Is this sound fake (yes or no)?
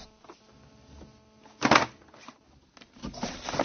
no